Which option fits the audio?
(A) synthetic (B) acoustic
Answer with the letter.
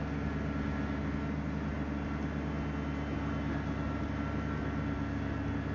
B